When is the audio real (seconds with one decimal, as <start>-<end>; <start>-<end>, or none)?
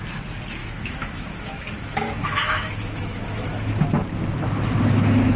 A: 0.0-0.6; 3.8-5.4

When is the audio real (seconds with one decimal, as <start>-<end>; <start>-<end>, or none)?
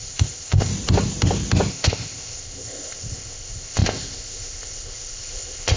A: 0.7-1.7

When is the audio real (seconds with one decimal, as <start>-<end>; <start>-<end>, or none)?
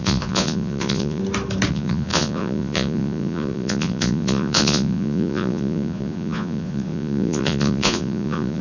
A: 1.2-1.7